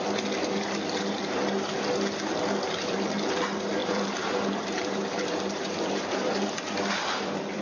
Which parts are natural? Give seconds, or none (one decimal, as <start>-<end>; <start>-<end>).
0.0-3.8; 6.5-7.6